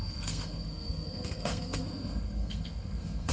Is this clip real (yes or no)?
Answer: no